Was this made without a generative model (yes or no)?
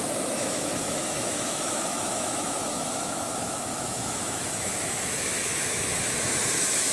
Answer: no